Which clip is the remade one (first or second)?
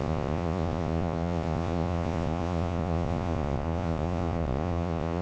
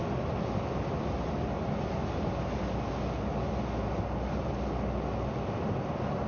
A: first